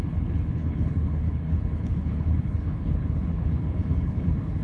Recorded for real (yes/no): no